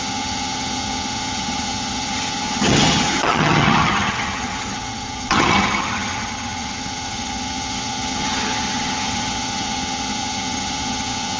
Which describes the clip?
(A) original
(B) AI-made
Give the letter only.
B